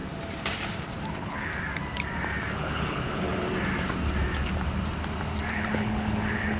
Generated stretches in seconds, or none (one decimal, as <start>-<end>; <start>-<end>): 1.1-1.5; 2.5-3.3; 5.5-6.6